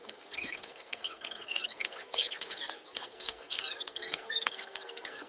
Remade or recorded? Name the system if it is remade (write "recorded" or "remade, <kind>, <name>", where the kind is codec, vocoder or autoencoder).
remade, codec, SNAC